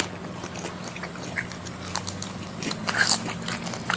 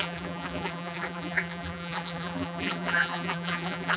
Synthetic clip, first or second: second